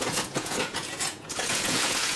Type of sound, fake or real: fake